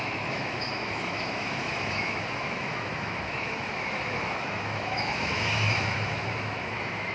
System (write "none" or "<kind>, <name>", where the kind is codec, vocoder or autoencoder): autoencoder, DAC-VAE